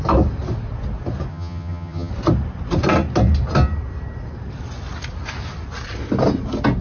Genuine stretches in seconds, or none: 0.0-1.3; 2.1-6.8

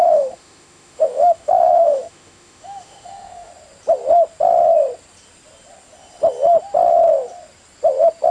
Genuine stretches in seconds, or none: 3.5-8.3

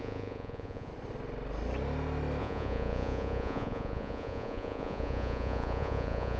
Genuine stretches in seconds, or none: 0.9-2.4

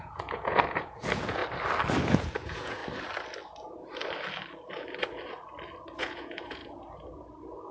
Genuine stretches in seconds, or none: 1.4-2.1; 2.8-6.0; 6.6-7.7